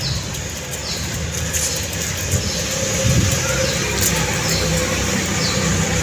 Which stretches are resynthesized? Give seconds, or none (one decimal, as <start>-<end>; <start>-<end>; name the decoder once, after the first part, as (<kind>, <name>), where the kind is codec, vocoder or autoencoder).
none